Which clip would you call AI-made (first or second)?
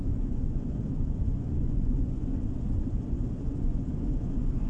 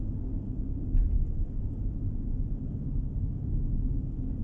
first